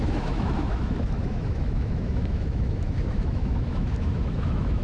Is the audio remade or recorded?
remade